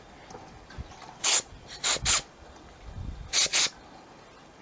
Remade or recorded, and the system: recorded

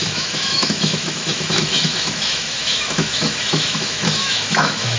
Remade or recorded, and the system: remade, autoencoder, DAC-VAE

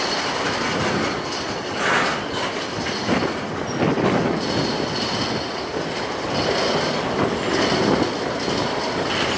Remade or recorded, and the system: recorded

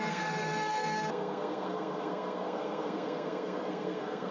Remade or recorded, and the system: remade, codec, SNAC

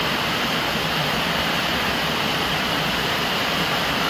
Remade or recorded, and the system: recorded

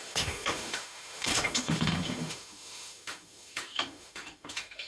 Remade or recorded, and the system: remade, autoencoder, DAC-VAE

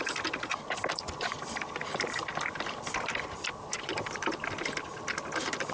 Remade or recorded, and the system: remade, vocoder, BigVGAN v2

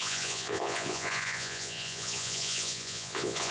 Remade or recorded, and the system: remade, vocoder, Vocos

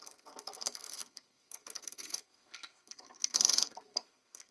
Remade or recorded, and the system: remade, codec, SNAC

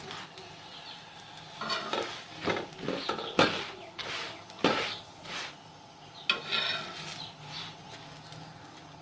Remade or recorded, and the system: recorded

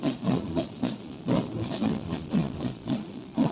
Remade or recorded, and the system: remade, vocoder, Vocos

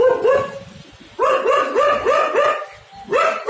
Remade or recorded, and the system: recorded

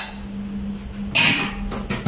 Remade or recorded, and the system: recorded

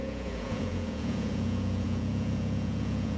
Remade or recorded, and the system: remade, vocoder, Vocos